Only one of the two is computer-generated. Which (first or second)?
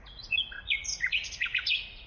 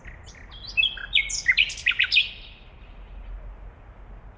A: first